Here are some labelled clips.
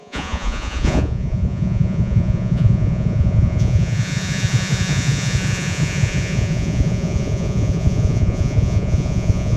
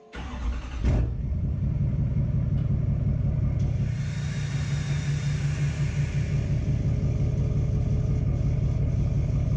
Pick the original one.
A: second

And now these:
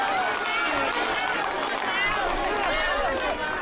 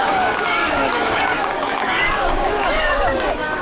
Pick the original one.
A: first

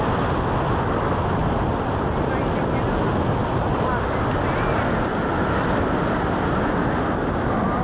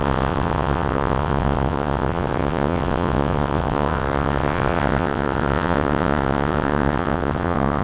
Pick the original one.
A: first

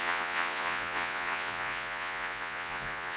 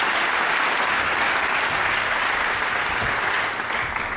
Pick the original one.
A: second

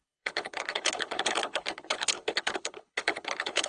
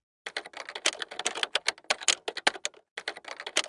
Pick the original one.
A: second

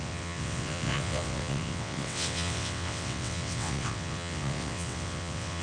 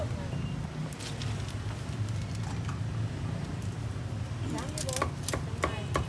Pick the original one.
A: second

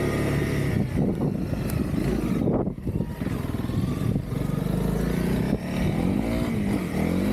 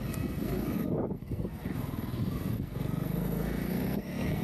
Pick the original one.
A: first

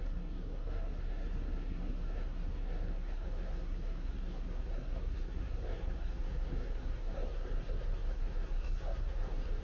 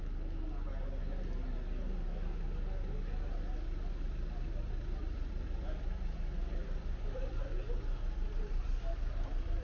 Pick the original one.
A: second